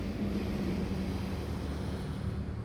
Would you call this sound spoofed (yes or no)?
no